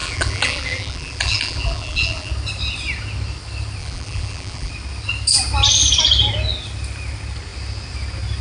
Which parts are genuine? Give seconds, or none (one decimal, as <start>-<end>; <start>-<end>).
2.3-3.8; 4.7-8.4